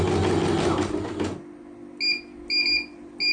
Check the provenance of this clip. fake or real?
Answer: real